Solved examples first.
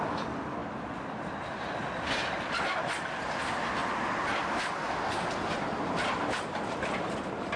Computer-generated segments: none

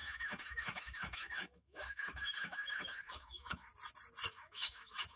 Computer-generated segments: 0.0-3.7; 4.3-5.2

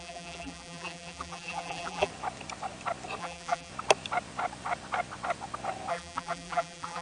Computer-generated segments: 0.0-2.1; 3.2-3.7; 5.9-7.0